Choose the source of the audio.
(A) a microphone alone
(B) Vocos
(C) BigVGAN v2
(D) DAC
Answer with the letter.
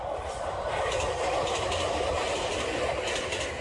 A